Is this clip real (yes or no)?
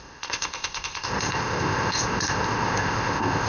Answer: no